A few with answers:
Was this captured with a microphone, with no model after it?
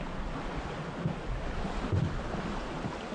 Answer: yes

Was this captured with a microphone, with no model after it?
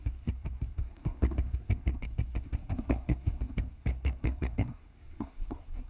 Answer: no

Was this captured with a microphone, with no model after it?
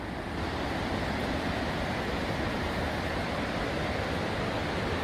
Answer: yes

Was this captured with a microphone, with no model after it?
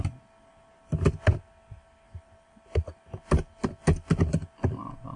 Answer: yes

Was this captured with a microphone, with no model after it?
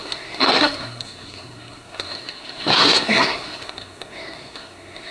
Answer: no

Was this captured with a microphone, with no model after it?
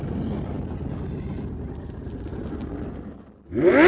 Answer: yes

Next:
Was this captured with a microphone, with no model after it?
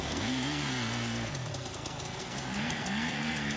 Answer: no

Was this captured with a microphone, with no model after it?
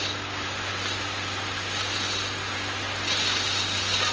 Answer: yes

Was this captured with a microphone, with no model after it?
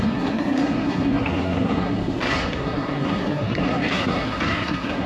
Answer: no